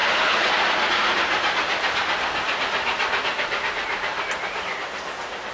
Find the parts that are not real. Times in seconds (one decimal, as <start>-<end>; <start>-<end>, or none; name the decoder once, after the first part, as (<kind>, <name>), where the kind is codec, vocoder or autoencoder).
0.0-0.5 (codec, HILCodec)